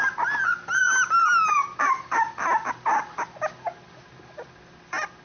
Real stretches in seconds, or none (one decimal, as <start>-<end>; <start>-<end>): 0.0-5.2